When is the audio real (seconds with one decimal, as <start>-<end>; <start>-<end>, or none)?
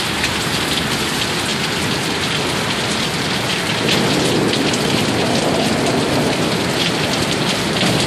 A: 0.0-8.1